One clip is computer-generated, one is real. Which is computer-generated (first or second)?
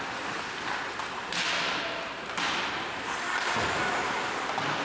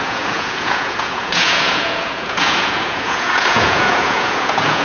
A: second